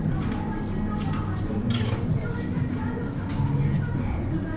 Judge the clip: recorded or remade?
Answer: recorded